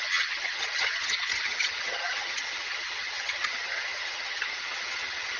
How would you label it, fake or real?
fake